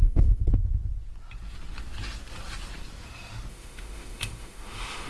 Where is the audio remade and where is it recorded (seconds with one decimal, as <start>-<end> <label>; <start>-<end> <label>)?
0.0-0.4 remade; 0.4-3.5 recorded; 3.5-5.1 remade